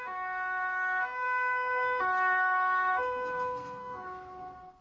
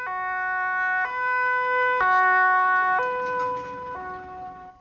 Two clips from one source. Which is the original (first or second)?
second